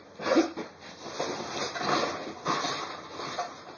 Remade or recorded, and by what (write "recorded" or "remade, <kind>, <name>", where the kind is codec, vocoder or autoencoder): recorded